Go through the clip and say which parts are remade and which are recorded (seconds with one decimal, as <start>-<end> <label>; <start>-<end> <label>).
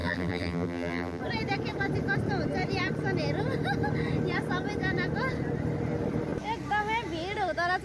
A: 0.0-1.2 remade; 1.2-7.8 recorded